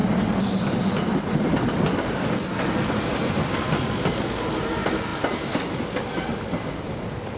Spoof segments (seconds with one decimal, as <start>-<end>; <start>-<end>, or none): none